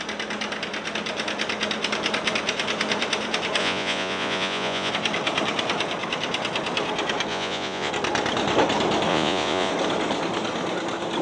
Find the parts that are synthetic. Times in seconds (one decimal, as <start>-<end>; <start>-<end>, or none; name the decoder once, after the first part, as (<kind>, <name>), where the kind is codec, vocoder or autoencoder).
3.6-4.9 (vocoder, Vocos); 7.3-7.9; 9.1-9.7